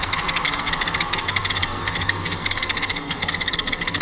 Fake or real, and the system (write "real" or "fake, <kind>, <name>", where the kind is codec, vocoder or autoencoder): fake, codec, SNAC